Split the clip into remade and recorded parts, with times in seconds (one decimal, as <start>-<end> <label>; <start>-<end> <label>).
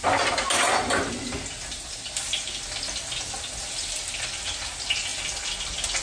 0.0-6.0 recorded